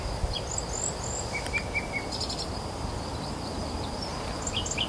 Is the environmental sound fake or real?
real